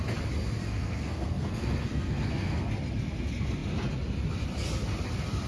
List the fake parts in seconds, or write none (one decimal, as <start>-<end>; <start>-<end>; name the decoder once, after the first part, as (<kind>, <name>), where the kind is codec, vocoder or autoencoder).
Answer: 0.6-2.7 (codec, SNAC)